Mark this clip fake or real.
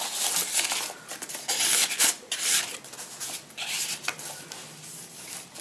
real